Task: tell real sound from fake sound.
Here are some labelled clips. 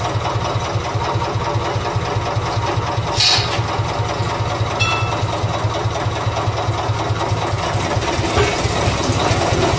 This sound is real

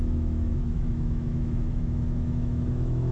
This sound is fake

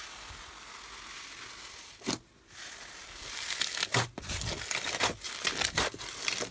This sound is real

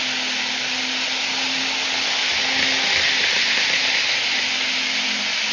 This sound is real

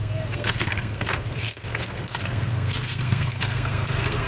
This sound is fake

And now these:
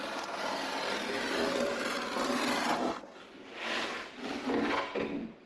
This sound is real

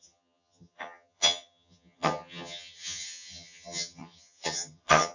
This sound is fake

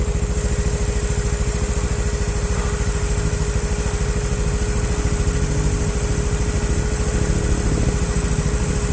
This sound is real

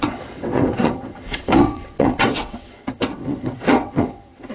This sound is fake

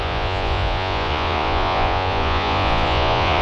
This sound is fake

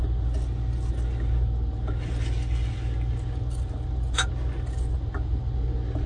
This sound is real